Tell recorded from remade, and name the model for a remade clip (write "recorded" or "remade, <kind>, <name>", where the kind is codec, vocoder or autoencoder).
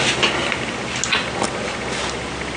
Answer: recorded